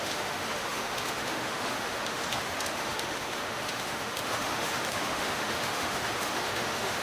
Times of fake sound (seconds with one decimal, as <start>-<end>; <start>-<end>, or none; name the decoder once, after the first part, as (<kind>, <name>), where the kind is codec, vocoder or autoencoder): 0.0-7.0 (autoencoder, DAC-VAE)